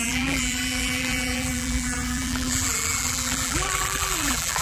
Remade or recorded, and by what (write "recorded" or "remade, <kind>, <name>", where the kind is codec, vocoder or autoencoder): remade, vocoder, BigVGAN v2